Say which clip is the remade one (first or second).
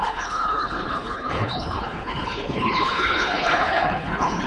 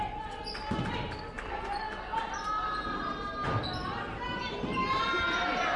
first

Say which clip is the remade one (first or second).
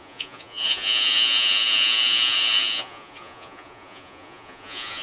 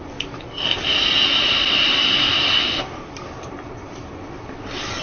first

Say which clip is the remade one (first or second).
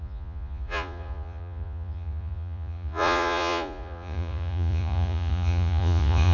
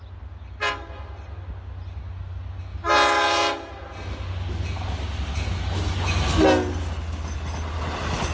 first